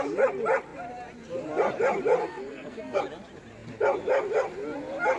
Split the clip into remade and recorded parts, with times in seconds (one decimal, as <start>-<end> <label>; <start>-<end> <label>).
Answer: 0.0-2.2 recorded; 2.2-3.0 remade; 3.0-5.2 recorded

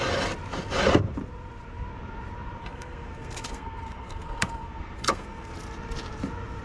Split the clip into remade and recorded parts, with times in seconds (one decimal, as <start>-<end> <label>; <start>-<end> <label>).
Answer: 0.0-2.6 recorded; 2.6-5.5 remade; 5.5-6.6 recorded

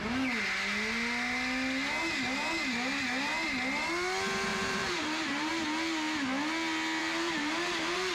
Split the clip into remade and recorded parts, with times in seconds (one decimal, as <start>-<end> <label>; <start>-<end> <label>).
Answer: 0.0-4.5 recorded; 4.5-5.5 remade; 5.5-7.0 recorded; 7.0-8.1 remade

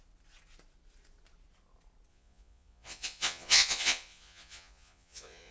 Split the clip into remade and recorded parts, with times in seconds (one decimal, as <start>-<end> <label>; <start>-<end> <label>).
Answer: 0.0-2.1 recorded; 2.1-5.5 remade

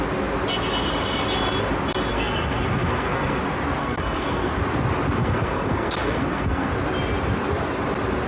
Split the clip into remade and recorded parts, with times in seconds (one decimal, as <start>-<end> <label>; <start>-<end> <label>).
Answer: 0.0-2.1 recorded; 2.1-3.4 remade; 3.4-3.8 recorded; 3.8-4.5 remade; 4.5-5.2 recorded; 5.2-6.7 remade; 6.7-8.3 recorded